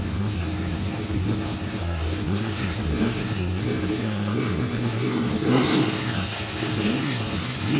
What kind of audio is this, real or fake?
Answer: fake